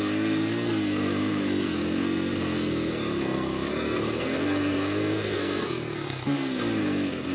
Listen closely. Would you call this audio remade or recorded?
remade